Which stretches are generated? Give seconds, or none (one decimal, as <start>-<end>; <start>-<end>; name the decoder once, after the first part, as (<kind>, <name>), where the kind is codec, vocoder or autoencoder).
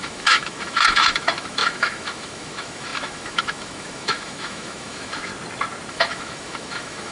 0.0-5.3 (autoencoder, DAC-VAE); 5.9-7.1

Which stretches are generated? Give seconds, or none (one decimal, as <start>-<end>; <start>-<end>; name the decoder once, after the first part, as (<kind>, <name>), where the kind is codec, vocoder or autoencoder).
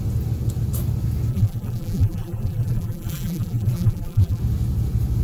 1.3-4.4 (vocoder, BigVGAN v2)